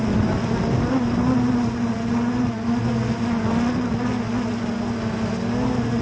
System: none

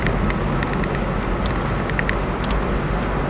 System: none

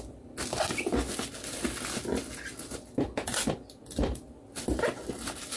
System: none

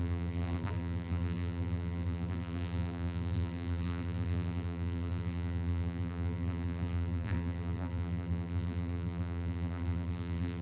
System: vocoder, BigVGAN v2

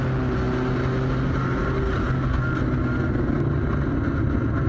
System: none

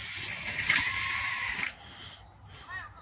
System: vocoder, BigVGAN v2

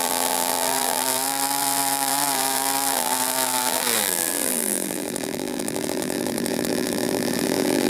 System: vocoder, BigVGAN v2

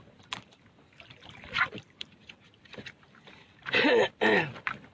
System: vocoder, BigVGAN v2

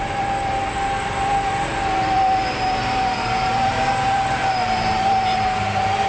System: vocoder, BigVGAN v2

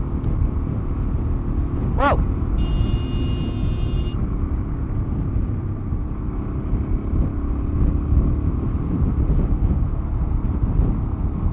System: none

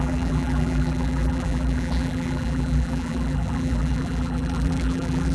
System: vocoder, BigVGAN v2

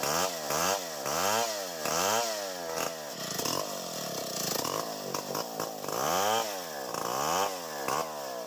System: none